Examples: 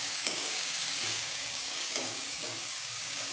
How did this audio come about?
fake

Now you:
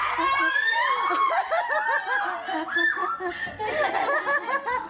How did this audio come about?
real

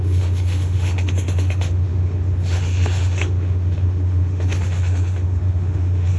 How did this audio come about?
fake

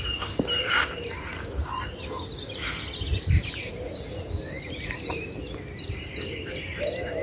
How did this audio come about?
real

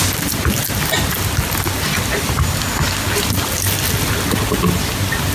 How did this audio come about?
real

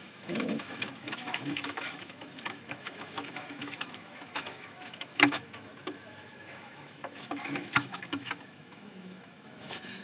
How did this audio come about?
fake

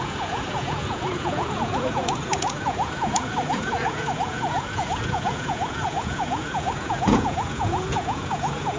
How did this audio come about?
fake